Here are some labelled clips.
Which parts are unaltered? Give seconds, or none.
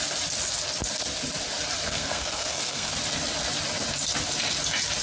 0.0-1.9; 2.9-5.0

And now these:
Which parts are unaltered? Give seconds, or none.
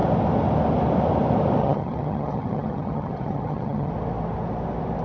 0.0-1.6; 3.9-5.0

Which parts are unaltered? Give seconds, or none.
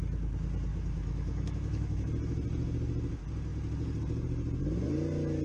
0.0-0.7; 2.1-5.4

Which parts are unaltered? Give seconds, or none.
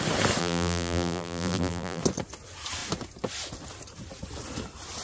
0.0-0.4; 2.0-5.0